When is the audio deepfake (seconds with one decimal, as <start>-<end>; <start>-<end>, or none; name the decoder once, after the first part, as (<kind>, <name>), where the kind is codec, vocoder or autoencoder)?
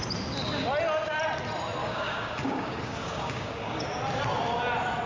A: 1.8-4.0 (codec, DAC)